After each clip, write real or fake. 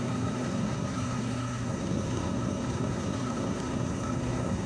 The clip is fake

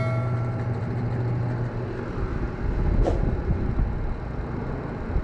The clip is real